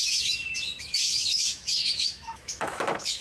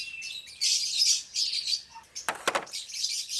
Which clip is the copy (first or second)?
first